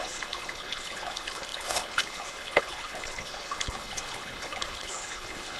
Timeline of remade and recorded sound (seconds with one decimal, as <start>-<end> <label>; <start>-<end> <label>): 0.0-5.6 remade